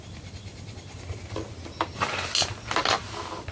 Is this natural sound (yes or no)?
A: yes